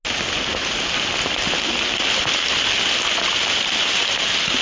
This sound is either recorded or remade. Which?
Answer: recorded